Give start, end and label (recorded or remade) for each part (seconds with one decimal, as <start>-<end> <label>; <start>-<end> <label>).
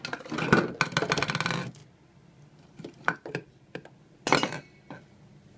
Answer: 0.0-5.6 recorded